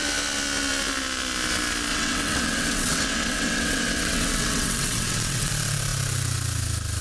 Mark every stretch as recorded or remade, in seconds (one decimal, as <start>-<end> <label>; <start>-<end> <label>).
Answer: 0.0-1.9 recorded; 1.9-5.5 remade; 5.5-7.0 recorded